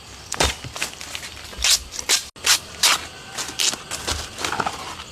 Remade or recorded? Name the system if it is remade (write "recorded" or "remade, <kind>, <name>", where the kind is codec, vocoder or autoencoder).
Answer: recorded